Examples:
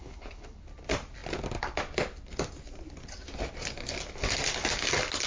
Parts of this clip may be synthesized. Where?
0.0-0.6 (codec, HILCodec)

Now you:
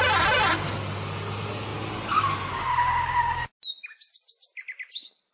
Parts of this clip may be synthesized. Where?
none

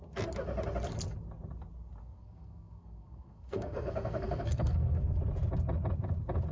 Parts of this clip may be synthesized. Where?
2.0-5.2 (codec, SNAC)

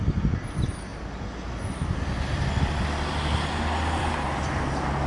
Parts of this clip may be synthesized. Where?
none

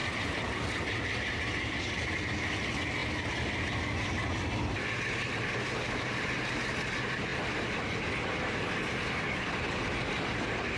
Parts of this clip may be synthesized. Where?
none